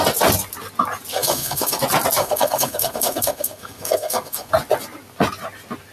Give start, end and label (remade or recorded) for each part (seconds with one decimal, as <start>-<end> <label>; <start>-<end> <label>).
0.0-1.1 recorded; 1.1-1.8 remade; 1.8-2.2 recorded; 2.2-4.5 remade; 4.5-5.9 recorded